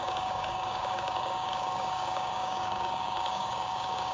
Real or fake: fake